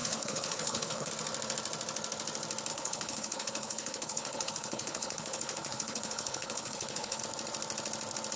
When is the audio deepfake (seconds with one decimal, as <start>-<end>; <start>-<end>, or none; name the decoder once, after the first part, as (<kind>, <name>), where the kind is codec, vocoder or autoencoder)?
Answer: 0.0-1.1 (codec, HILCodec); 2.7-7.2